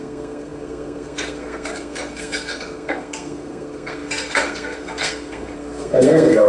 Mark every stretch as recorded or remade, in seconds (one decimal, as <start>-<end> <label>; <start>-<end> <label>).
0.0-6.5 remade